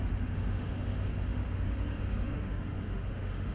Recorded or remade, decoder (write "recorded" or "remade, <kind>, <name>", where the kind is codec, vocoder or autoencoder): remade, autoencoder, DAC-VAE